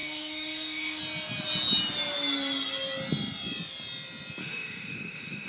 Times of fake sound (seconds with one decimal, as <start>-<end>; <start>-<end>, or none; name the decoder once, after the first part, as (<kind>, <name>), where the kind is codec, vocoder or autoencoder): 0.0-1.0 (autoencoder, DAC-VAE); 4.4-5.5